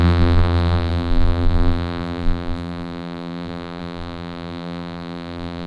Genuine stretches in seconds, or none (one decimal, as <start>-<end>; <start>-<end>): none